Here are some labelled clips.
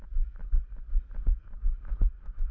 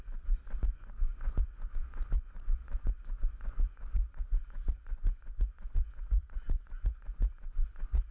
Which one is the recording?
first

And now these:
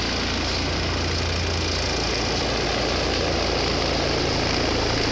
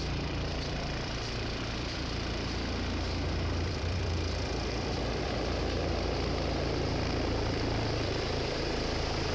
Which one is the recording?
first